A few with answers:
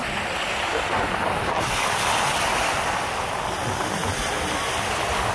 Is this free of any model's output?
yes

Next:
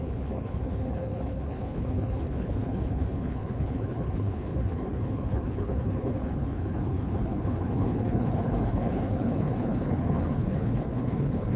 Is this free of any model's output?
no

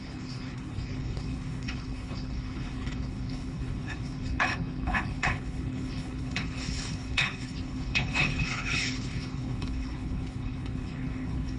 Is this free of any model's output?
no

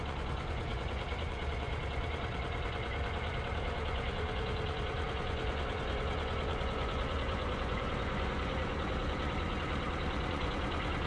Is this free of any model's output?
no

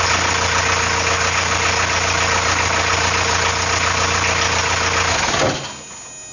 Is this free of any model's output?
yes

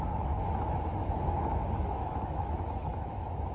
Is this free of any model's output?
no